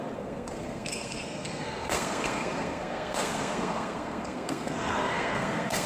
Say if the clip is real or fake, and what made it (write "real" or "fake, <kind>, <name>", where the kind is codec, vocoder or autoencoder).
fake, codec, SNAC